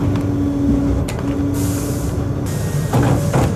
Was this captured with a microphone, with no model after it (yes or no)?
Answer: yes